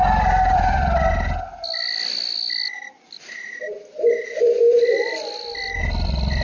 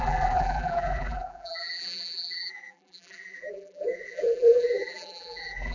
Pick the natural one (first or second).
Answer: first